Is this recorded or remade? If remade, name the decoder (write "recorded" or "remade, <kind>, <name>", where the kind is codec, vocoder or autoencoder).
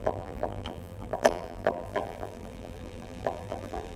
remade, vocoder, BigVGAN v2